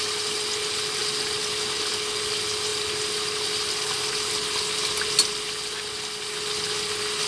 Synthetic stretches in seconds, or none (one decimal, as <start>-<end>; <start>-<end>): none